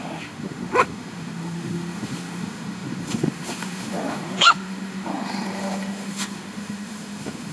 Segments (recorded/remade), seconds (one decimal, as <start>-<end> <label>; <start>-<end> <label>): 0.0-7.5 remade